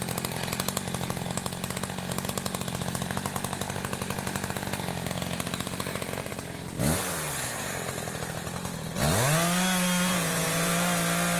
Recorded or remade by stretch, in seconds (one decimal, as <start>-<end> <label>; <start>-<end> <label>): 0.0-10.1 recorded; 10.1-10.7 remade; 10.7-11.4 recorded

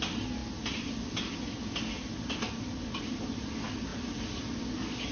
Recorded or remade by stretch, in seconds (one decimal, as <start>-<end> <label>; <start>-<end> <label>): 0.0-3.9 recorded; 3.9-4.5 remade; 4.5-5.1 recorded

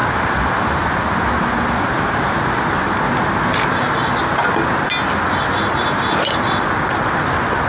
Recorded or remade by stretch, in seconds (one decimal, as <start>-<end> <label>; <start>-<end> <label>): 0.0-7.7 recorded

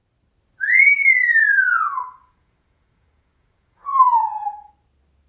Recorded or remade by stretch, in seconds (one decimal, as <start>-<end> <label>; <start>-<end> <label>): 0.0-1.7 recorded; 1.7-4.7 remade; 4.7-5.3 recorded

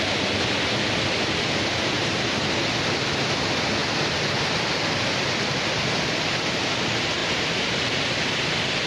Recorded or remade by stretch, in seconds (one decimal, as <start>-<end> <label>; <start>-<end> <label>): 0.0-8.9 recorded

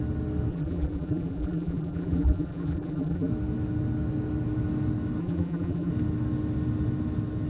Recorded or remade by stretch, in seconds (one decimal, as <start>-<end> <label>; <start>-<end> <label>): 0.0-0.5 recorded; 0.5-3.3 remade; 3.3-5.2 recorded; 5.2-5.9 remade; 5.9-7.5 recorded

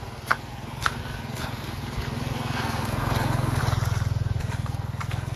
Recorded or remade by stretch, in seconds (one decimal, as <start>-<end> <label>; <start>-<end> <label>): 0.0-3.6 remade; 3.6-4.4 recorded; 4.4-5.4 remade